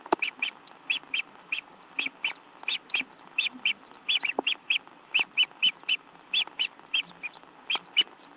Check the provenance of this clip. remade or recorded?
recorded